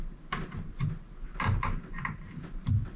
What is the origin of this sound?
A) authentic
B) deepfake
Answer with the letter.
A